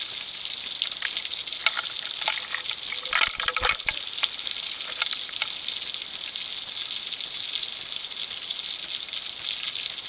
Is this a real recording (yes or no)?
yes